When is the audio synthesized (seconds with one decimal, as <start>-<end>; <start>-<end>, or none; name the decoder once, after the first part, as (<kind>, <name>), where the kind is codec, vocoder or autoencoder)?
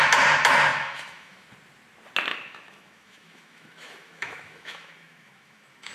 0.7-1.5 (autoencoder, DAC-VAE); 2.3-5.9